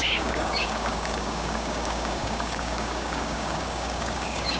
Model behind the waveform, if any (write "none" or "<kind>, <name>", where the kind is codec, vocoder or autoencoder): codec, DAC